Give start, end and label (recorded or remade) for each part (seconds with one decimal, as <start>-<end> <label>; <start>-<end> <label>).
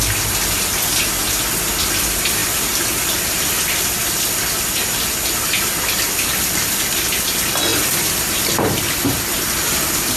0.0-10.2 recorded